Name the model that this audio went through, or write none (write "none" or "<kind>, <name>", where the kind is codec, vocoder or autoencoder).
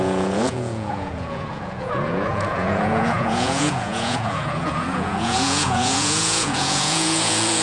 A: vocoder, Vocos